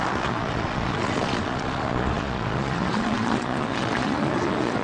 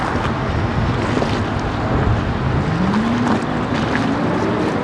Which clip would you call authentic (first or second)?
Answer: second